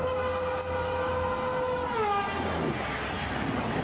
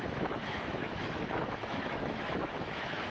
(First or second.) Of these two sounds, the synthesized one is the second